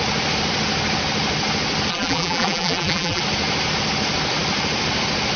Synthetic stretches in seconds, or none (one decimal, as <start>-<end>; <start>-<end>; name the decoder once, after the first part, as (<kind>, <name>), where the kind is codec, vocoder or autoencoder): 1.9-3.2 (vocoder, BigVGAN v2)